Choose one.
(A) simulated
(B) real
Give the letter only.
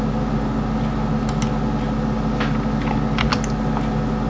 B